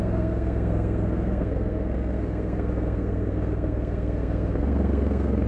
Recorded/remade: remade